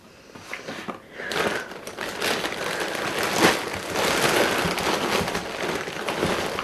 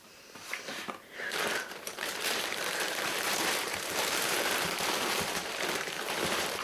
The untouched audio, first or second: first